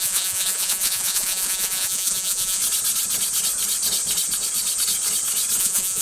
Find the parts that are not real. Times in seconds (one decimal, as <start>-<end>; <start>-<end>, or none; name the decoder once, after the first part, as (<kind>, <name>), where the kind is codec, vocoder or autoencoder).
0.0-2.6 (vocoder, Vocos); 5.6-6.0